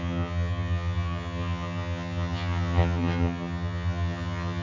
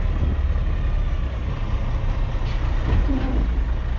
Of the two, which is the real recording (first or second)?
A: second